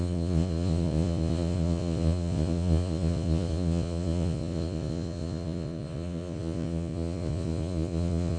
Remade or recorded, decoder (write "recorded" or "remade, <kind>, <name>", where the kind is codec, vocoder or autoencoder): remade, vocoder, Vocos